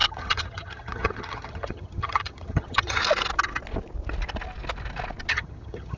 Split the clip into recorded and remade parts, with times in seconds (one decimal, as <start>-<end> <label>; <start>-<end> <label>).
0.0-3.0 remade; 3.0-5.3 recorded; 5.3-6.0 remade